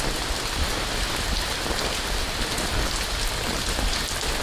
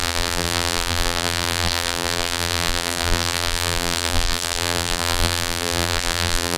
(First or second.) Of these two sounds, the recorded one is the first